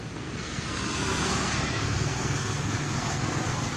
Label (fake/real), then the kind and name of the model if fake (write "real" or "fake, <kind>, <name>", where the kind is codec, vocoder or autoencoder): fake, codec, SNAC